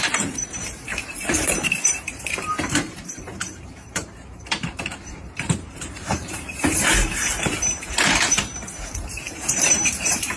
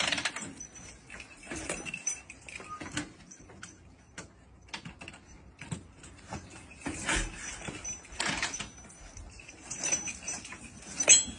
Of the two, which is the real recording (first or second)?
second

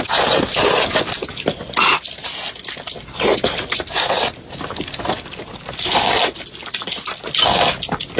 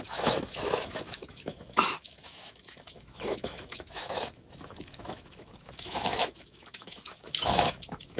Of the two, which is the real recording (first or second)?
first